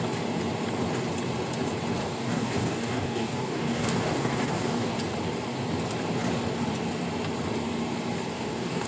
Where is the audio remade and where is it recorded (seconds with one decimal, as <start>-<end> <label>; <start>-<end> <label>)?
0.0-2.0 recorded; 2.0-5.0 remade; 5.0-8.3 recorded; 8.3-8.9 remade